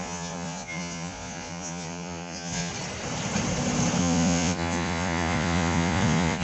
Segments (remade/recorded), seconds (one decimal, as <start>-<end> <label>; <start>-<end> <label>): 0.0-2.7 remade; 2.7-4.0 recorded; 4.0-6.4 remade